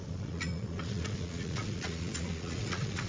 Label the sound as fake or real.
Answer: fake